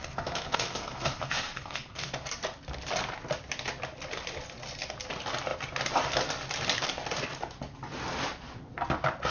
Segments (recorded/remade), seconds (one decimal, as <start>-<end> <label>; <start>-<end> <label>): 0.0-2.1 remade; 2.1-9.3 recorded